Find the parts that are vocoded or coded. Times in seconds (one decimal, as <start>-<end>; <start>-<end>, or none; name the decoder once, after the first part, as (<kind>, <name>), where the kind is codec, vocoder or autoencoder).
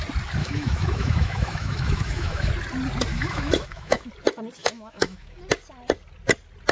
0.4-2.5 (autoencoder, DAC-VAE); 3.1-4.1; 4.6-5.4